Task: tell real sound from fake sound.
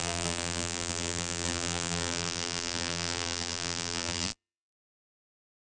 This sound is fake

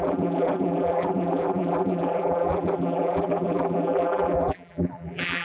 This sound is fake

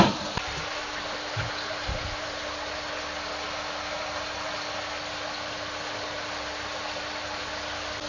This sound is real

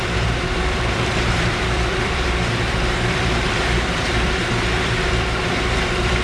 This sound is fake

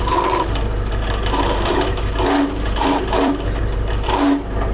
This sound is fake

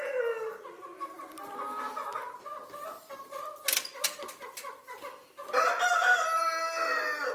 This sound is real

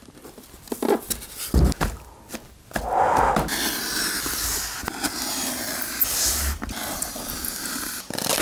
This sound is real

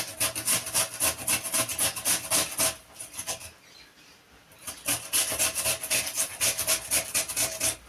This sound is real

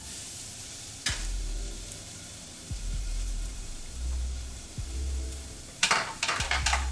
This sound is fake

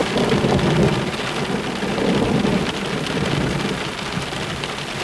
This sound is real